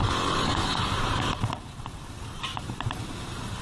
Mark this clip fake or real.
real